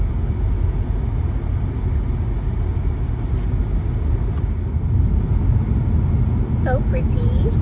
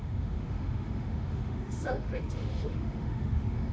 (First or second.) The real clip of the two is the first